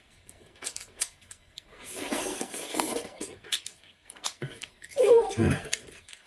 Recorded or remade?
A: remade